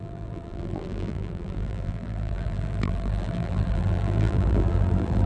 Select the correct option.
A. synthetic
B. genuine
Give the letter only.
A